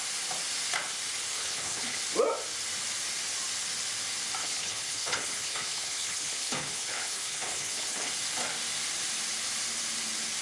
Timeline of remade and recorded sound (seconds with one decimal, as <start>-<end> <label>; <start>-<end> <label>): 0.0-1.3 recorded; 1.3-2.0 remade; 2.0-4.4 recorded; 4.4-8.1 remade; 8.1-10.4 recorded